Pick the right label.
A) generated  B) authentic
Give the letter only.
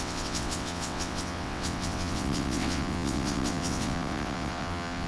A